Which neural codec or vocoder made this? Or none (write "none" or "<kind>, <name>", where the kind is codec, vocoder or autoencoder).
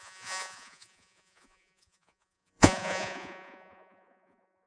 vocoder, Vocos